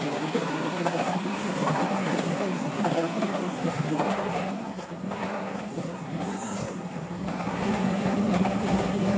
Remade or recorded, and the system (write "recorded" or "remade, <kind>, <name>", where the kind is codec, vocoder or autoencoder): remade, codec, SNAC